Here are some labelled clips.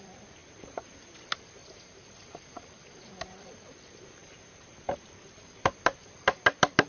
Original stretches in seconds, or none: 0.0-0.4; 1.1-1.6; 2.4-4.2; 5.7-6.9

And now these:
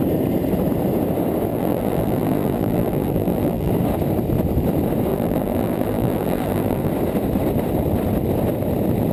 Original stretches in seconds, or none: 0.0-1.5; 3.7-5.1; 6.9-9.1

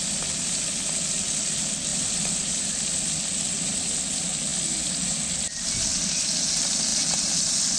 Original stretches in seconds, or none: 0.0-1.9; 3.0-7.8

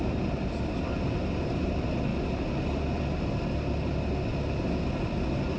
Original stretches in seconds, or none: 2.1-5.6